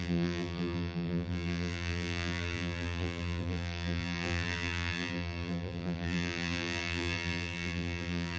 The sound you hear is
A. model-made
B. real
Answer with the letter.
A